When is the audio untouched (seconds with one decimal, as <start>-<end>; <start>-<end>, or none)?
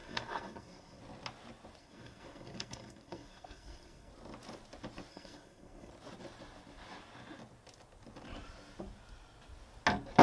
1.0-1.8; 4.1-5.1; 5.9-10.2